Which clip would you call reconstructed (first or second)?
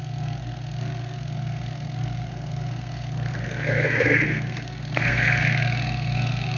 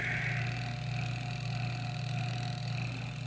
first